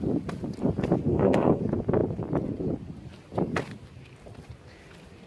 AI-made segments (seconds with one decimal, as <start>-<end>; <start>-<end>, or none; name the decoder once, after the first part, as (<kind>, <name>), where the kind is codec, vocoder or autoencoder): 1.1-1.6 (codec, SNAC)